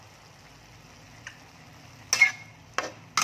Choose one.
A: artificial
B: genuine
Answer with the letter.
B